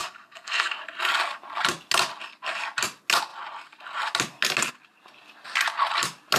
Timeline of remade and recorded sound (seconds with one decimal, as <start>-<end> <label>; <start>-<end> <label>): 0.0-0.8 remade; 0.8-6.4 recorded